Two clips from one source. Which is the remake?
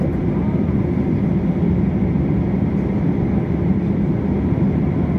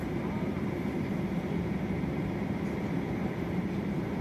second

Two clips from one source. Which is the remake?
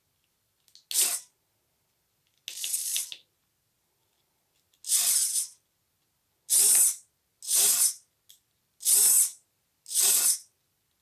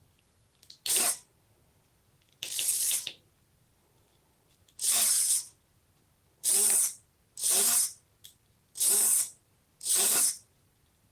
second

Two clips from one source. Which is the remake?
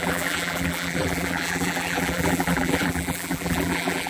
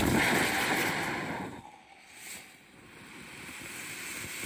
first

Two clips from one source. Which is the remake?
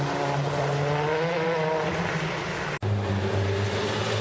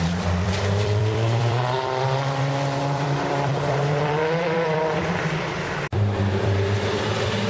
second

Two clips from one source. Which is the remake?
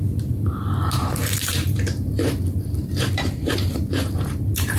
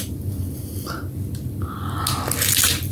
first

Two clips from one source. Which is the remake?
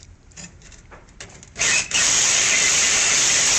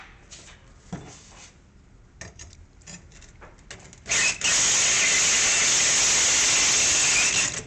first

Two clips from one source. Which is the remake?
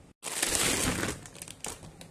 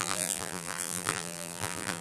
second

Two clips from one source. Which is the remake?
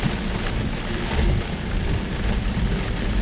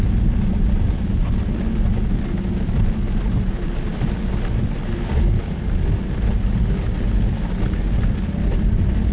first